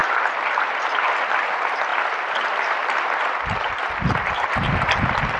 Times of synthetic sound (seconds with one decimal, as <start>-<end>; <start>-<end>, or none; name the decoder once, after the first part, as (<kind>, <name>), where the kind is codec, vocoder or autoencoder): none